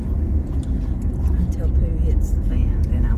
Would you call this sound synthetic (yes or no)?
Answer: no